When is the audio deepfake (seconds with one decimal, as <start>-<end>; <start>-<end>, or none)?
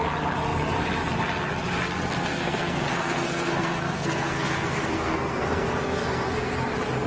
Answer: 2.3-6.6